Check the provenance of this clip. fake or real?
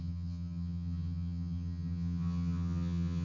fake